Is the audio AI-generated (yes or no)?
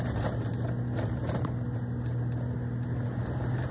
no